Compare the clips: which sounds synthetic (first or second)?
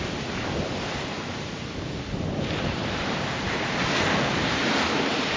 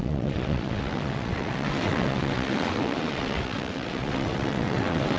second